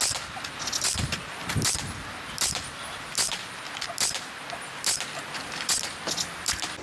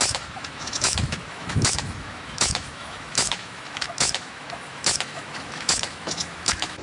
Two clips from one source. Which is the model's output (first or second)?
second